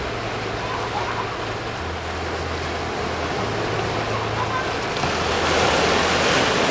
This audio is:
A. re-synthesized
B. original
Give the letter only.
B